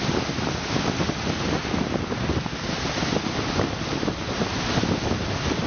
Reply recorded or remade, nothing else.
recorded